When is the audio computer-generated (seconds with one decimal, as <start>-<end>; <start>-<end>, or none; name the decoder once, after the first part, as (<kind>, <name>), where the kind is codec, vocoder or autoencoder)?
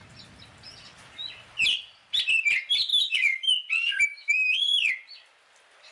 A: 2.9-3.5 (autoencoder, DAC-VAE); 4.1-4.9